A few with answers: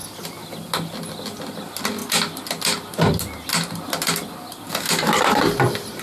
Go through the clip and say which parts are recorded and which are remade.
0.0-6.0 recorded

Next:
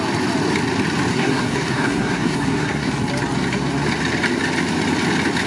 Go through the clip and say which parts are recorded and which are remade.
0.0-1.1 recorded; 1.1-2.9 remade; 2.9-5.5 recorded

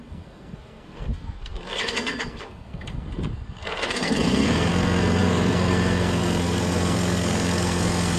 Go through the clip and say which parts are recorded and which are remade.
0.0-8.2 remade

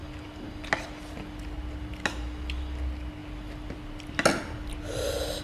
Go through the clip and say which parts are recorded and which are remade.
0.0-5.4 recorded

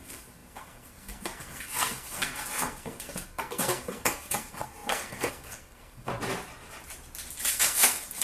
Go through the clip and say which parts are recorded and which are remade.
0.0-6.1 remade; 6.1-7.5 recorded; 7.5-8.2 remade